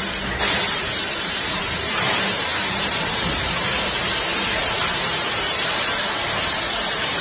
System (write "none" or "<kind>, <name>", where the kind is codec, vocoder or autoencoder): vocoder, BigVGAN v2